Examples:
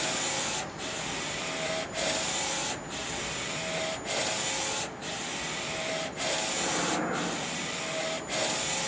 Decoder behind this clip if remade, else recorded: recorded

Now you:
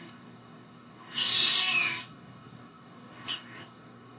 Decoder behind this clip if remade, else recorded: remade, codec, DAC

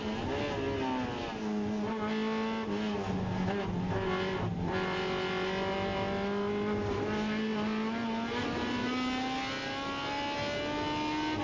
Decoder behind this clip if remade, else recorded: recorded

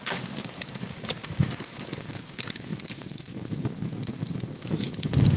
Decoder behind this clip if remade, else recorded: remade, codec, DAC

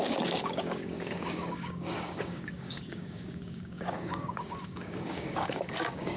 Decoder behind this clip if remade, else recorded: remade, codec, DAC